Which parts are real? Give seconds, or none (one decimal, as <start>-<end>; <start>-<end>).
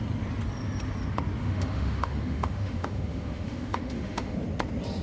0.0-1.4; 4.4-5.0